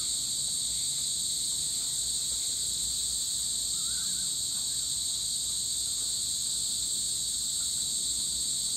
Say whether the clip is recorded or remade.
recorded